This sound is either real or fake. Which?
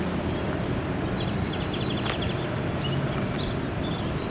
real